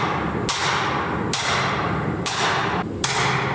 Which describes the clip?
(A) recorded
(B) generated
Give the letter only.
A